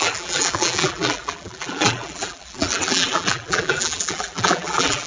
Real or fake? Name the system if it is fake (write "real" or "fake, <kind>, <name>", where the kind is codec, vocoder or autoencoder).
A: fake, vocoder, BigVGAN v2